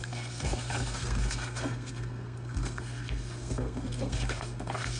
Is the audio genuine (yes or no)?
no